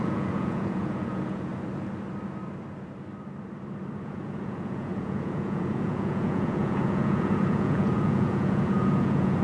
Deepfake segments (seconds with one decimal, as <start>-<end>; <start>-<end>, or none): 0.0-1.5; 4.0-9.4